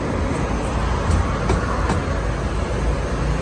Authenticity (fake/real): real